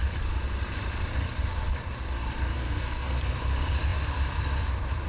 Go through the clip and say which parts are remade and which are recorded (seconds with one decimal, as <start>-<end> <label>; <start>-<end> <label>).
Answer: 0.0-2.5 recorded; 2.5-3.2 remade; 3.2-5.1 recorded